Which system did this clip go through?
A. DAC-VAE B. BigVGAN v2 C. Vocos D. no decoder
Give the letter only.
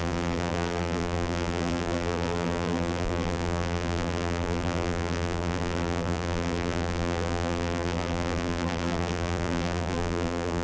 B